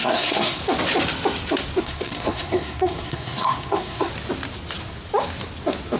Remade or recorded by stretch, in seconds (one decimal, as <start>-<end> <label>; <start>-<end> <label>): 0.0-0.6 remade; 0.6-1.8 recorded; 1.8-4.1 remade; 4.1-6.0 recorded